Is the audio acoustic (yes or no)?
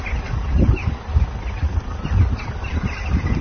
yes